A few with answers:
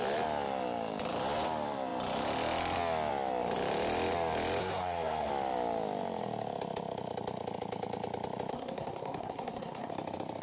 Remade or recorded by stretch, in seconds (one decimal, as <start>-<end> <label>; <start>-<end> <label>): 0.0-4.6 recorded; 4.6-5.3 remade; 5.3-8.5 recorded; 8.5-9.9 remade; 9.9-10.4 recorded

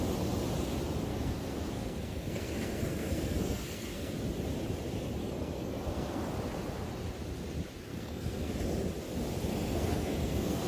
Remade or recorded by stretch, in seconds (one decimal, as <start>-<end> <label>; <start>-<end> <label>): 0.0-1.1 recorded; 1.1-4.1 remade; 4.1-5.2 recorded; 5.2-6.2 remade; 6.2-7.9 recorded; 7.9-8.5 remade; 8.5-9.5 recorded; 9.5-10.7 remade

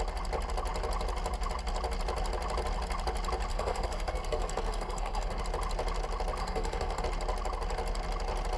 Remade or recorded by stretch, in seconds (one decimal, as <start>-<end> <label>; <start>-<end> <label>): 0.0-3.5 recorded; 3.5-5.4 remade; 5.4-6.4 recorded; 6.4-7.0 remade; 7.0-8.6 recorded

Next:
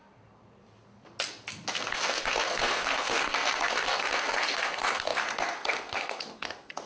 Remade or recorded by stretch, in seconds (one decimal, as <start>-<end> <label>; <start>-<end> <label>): 0.0-1.7 recorded; 1.7-6.9 remade

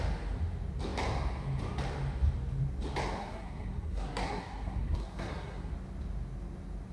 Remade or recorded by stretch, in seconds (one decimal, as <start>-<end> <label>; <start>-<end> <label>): 0.0-3.2 recorded; 3.2-5.7 remade; 5.7-6.9 recorded

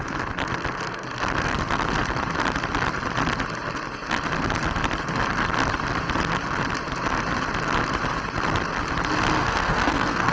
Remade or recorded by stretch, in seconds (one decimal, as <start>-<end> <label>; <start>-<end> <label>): 0.0-9.4 recorded; 9.4-10.3 remade

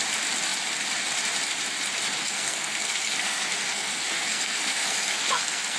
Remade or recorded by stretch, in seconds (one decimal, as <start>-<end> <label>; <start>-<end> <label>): 0.0-2.2 recorded; 2.2-5.8 remade